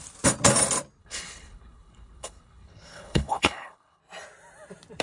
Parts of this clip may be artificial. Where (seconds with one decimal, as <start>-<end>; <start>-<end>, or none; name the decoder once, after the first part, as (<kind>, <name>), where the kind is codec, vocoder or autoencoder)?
1.0-4.0 (codec, HILCodec)